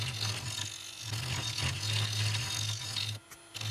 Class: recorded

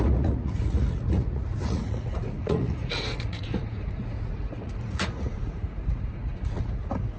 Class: remade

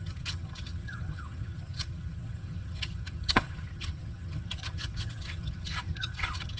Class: remade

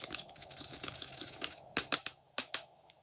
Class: remade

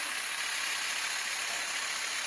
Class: recorded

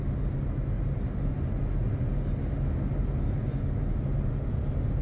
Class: recorded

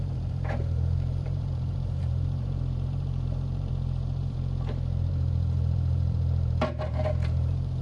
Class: remade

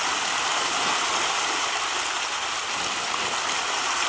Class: recorded